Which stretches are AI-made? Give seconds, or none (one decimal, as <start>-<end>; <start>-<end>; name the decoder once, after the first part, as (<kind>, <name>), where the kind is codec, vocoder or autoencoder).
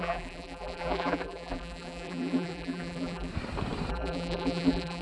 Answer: 0.0-3.3 (vocoder, BigVGAN v2); 3.9-5.0